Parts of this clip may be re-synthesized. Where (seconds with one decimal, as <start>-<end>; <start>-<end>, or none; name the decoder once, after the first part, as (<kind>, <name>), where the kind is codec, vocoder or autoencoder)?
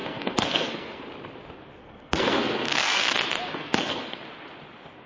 0.0-1.0 (codec, SNAC); 1.8-3.0; 3.5-4.2